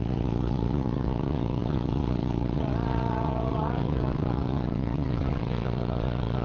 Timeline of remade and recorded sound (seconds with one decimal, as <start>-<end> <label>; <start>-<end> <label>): 0.0-6.4 remade